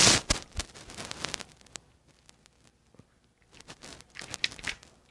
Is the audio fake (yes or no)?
no